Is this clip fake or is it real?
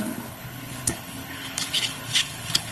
fake